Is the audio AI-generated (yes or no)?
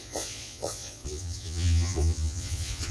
yes